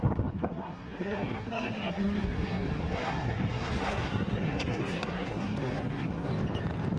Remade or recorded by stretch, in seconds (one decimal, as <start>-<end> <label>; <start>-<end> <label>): 0.0-6.3 remade; 6.3-7.0 recorded